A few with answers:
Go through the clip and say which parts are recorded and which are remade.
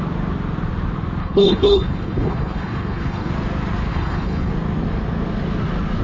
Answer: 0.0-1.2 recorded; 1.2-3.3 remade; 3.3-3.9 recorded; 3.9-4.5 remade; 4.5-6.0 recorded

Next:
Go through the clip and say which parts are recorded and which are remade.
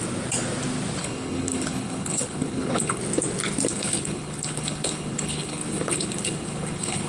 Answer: 0.0-1.0 recorded; 1.0-3.0 remade; 3.0-3.7 recorded; 3.7-7.1 remade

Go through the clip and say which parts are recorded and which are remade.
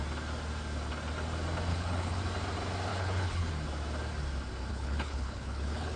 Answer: 0.0-1.7 recorded; 1.7-2.2 remade; 2.2-2.9 recorded; 2.9-3.5 remade; 3.5-4.7 recorded; 4.7-6.0 remade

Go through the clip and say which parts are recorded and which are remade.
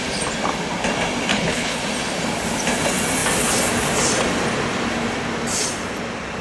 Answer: 0.0-1.3 recorded; 1.3-1.8 remade; 1.8-6.4 recorded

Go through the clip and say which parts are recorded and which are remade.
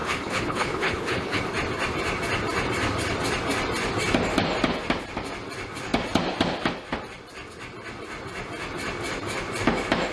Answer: 0.0-1.4 remade; 1.4-10.1 recorded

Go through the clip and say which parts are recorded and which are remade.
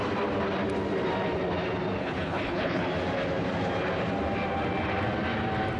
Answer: 0.0-2.0 recorded; 2.0-2.8 remade; 2.8-5.8 recorded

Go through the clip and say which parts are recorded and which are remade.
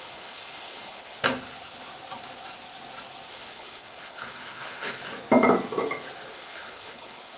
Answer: 0.0-1.2 remade; 1.2-3.3 recorded; 3.3-5.0 remade; 5.0-6.3 recorded; 6.3-7.4 remade